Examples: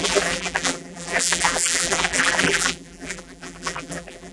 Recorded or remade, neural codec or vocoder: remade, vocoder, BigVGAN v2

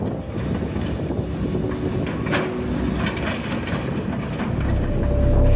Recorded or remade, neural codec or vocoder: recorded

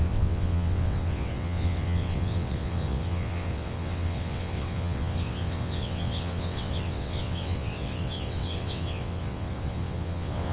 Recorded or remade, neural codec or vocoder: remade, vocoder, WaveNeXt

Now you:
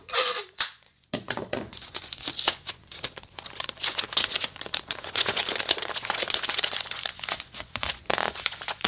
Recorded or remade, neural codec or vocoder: remade, vocoder, Vocos